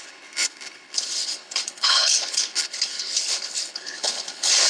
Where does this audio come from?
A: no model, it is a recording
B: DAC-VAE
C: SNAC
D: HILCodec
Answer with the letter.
D